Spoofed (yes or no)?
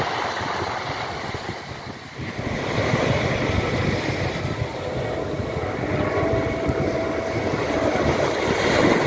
no